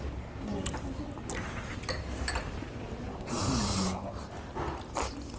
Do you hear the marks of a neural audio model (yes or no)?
no